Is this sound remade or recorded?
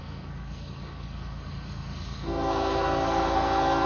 remade